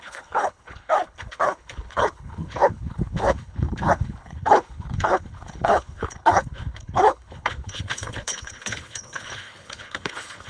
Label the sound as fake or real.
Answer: fake